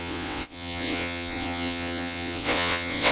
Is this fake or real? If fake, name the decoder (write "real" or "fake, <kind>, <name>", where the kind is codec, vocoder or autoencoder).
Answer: fake, vocoder, WaveNeXt